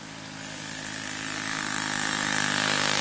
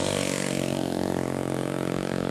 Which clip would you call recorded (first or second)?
first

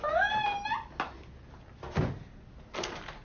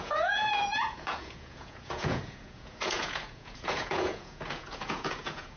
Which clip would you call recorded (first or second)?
first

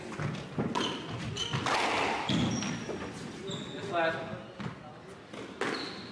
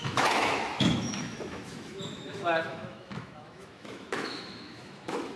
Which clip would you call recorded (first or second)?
first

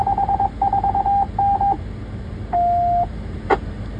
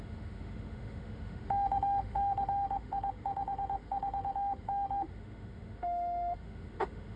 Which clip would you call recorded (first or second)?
first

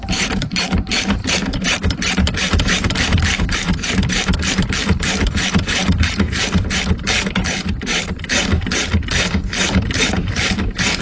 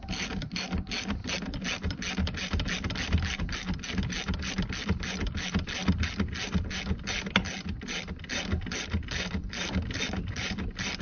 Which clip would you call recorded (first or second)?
second